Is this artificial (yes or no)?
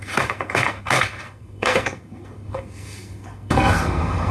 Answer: yes